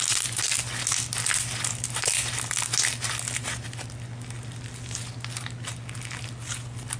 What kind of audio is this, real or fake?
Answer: real